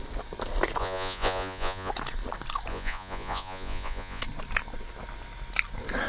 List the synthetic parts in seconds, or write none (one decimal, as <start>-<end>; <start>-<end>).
0.8-1.9; 2.7-4.2